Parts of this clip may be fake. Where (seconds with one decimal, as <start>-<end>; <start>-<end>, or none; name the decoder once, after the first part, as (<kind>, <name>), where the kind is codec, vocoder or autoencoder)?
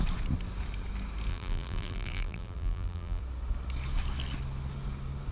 1.3-3.2 (vocoder, BigVGAN v2)